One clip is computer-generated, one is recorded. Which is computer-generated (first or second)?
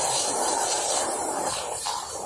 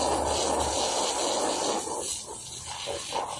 first